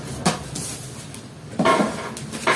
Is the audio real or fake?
real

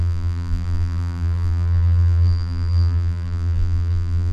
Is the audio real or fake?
fake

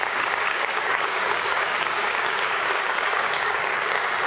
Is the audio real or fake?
fake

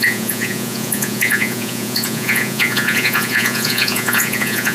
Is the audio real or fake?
fake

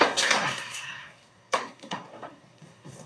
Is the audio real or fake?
fake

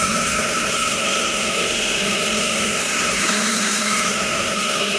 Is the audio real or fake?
fake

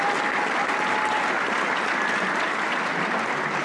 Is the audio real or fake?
real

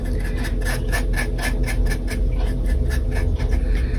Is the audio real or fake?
real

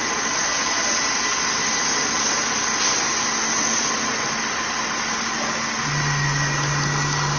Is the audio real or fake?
real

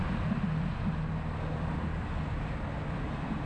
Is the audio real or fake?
real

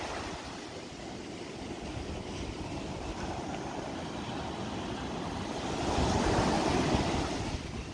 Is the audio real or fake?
real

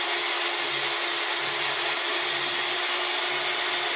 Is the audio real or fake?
real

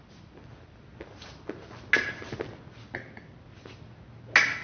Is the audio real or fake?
real